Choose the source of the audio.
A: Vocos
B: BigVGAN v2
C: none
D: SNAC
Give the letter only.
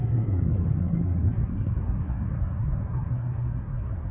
D